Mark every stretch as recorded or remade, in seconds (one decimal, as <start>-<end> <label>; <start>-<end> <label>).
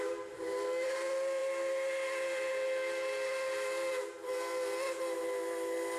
0.0-6.0 recorded